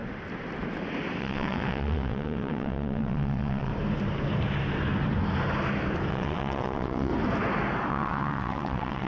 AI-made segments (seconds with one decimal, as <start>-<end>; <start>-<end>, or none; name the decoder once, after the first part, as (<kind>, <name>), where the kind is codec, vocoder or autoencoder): 1.2-3.7 (vocoder, WaveNeXt); 6.1-7.1; 7.9-9.1

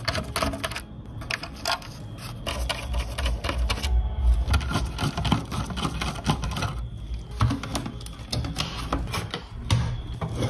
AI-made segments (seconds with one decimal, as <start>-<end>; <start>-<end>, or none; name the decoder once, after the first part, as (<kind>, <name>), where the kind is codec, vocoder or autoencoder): none